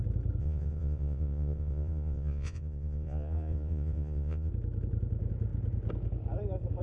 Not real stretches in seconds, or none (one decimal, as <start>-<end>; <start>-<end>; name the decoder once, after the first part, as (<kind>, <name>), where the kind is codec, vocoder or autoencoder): 0.4-4.5 (vocoder, Vocos)